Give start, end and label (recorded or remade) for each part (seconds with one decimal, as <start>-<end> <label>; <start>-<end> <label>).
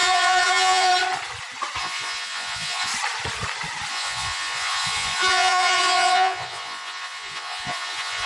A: 0.0-0.9 remade; 0.9-1.8 recorded; 1.8-2.9 remade; 2.9-3.9 recorded; 3.9-8.3 remade